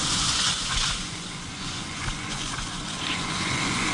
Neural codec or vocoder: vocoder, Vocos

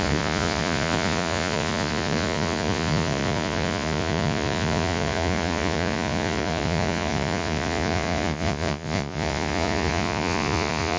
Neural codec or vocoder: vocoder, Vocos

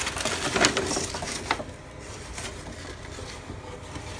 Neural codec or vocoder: none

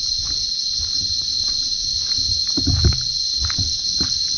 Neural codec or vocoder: none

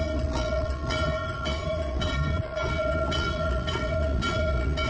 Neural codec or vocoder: vocoder, Vocos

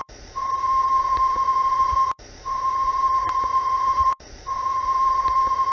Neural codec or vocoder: vocoder, Vocos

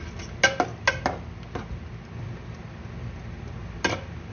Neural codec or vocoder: none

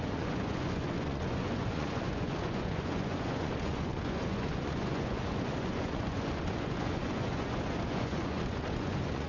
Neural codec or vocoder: vocoder, Vocos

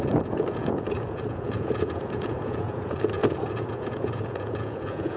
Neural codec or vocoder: vocoder, Vocos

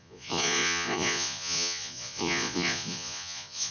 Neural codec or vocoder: vocoder, Vocos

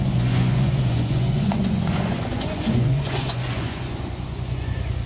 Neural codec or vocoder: vocoder, Vocos